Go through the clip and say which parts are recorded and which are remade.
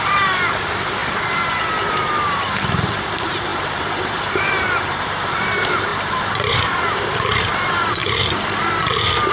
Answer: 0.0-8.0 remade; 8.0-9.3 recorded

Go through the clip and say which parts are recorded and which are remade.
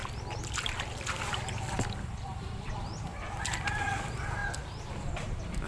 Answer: 0.0-1.6 recorded; 1.6-3.1 remade; 3.1-3.6 recorded; 3.6-4.4 remade; 4.4-4.9 recorded; 4.9-5.7 remade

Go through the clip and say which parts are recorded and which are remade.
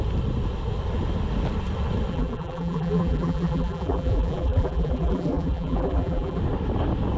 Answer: 0.0-2.1 recorded; 2.1-6.4 remade; 6.4-7.2 recorded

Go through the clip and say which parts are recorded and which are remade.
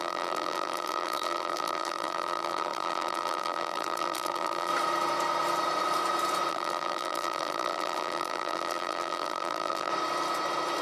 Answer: 0.0-4.7 remade; 4.7-6.5 recorded; 6.5-9.9 remade; 9.9-10.8 recorded